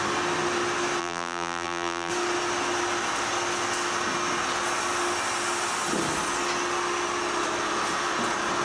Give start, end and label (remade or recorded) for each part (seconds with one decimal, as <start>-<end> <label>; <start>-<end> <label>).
0.0-1.0 recorded; 1.0-2.1 remade; 2.1-8.6 recorded